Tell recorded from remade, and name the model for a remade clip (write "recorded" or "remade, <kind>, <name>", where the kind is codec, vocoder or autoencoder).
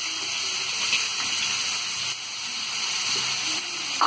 recorded